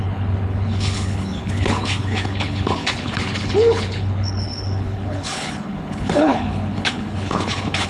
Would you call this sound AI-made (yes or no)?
yes